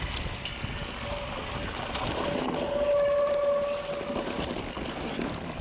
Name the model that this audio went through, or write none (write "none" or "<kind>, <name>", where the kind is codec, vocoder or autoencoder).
none